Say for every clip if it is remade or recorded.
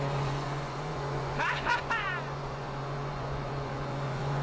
remade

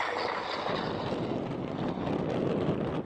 recorded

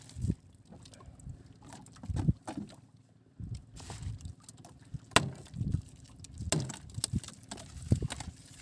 recorded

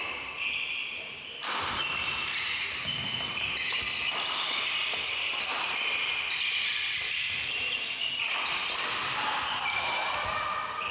recorded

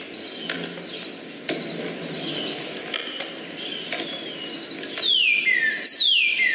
recorded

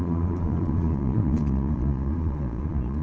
remade